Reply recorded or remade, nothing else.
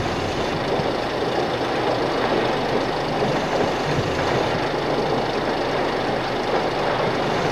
recorded